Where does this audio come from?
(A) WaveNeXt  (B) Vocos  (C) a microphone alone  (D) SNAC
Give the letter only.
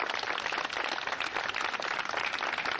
C